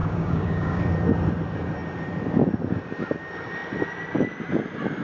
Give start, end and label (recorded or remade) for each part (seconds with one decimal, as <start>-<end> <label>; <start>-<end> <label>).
0.0-0.8 remade; 0.8-5.0 recorded